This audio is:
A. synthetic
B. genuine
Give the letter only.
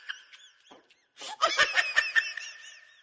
B